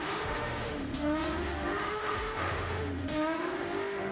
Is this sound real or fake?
fake